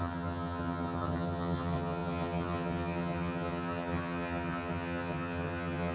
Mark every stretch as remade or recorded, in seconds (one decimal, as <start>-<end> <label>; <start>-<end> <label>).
0.0-5.9 remade